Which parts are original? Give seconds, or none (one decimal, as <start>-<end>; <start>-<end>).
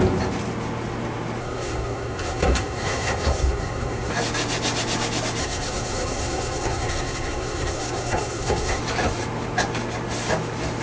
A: 0.0-1.4; 4.1-5.4; 8.8-10.8